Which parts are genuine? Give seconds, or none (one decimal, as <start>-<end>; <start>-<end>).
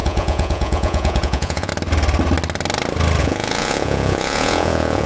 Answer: 1.7-3.2